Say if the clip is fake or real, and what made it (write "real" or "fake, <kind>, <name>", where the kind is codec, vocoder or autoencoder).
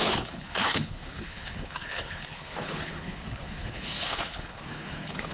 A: fake, codec, HILCodec